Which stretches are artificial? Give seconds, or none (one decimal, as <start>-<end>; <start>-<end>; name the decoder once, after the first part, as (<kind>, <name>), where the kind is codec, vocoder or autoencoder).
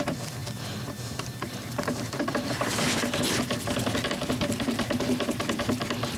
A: none